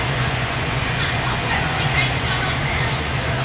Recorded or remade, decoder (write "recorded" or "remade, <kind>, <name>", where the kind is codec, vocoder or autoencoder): remade, vocoder, Vocos